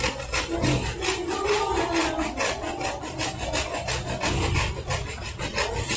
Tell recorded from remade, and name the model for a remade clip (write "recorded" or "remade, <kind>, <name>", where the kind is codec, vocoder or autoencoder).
recorded